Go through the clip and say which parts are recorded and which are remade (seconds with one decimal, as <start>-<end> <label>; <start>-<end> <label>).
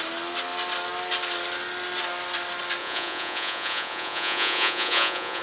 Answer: 0.0-2.8 recorded; 2.8-5.4 remade